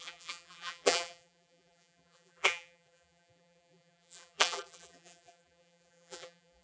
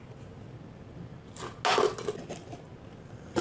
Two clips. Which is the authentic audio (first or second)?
second